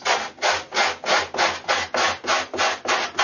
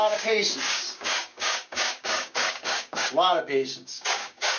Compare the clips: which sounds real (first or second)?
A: first